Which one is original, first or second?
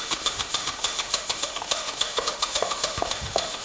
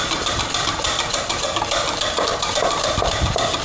second